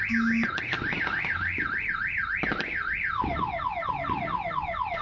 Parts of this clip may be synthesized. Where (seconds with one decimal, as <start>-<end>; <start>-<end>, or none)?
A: none